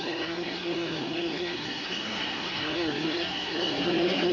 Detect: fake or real fake